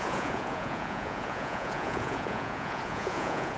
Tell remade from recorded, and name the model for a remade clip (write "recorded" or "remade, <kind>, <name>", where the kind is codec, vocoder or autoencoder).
remade, vocoder, Vocos